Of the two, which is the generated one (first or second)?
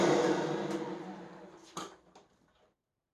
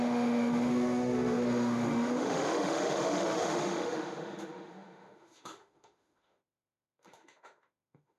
second